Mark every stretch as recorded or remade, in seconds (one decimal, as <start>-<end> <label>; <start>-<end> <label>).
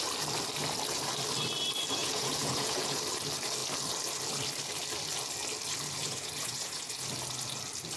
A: 0.0-2.0 recorded; 2.0-3.0 remade; 3.0-6.0 recorded; 6.0-7.1 remade; 7.1-8.0 recorded